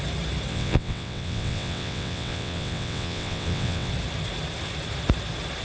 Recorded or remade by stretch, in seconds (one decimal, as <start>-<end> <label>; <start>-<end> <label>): 0.0-0.5 recorded; 0.5-3.9 remade; 3.9-5.6 recorded